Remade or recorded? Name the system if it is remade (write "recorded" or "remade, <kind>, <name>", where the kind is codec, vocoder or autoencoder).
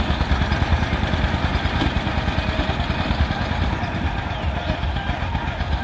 remade, vocoder, BigVGAN v2